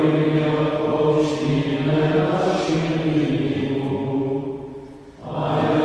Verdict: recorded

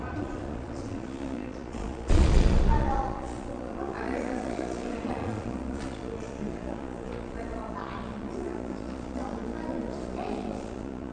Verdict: remade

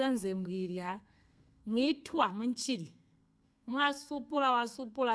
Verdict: remade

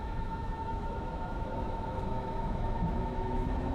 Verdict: remade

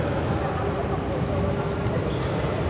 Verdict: recorded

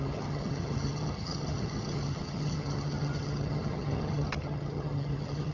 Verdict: remade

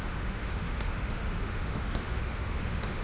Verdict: remade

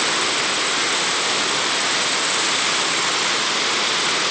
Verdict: recorded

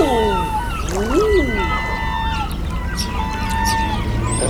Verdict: recorded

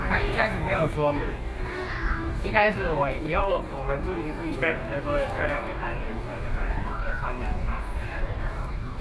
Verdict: remade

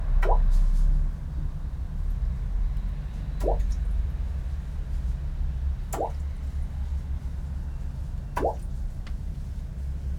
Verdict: recorded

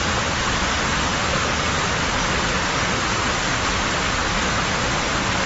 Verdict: recorded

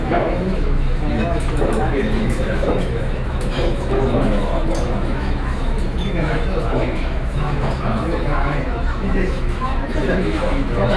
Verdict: remade